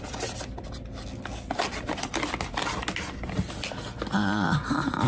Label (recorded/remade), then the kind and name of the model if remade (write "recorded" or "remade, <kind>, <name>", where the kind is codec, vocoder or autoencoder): recorded